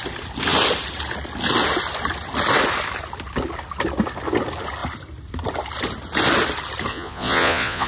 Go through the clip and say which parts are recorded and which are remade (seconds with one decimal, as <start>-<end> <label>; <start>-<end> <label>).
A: 0.0-6.9 recorded; 6.9-7.9 remade